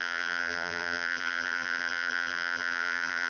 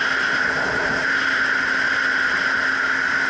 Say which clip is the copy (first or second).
first